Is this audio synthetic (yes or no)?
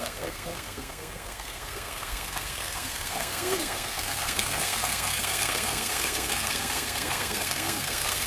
yes